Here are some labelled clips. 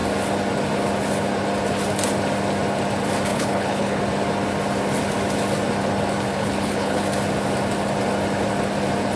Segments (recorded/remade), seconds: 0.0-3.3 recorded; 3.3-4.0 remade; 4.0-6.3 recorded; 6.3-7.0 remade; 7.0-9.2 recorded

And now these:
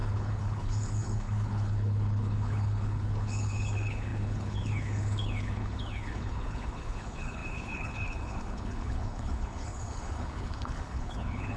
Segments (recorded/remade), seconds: 0.0-11.6 remade